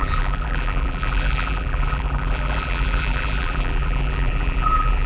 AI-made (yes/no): yes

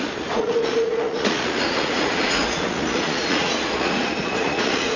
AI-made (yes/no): yes